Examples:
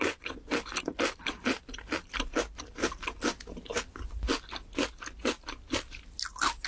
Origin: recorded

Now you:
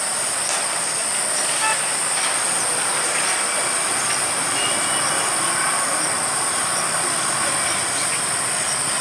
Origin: recorded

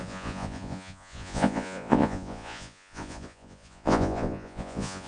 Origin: remade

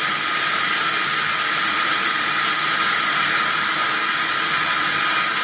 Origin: recorded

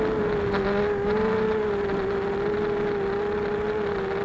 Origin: recorded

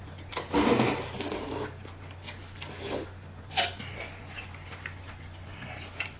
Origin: recorded